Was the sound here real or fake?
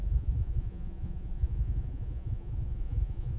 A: fake